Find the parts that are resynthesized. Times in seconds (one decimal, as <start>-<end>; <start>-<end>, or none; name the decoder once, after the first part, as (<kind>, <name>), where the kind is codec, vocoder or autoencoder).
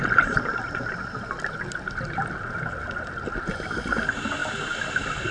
none